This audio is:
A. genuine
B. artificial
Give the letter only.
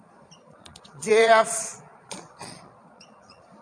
B